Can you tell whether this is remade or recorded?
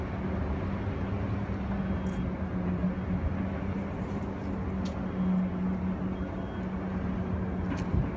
recorded